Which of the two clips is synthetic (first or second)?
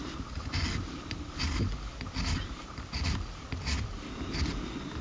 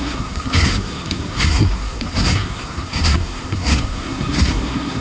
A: second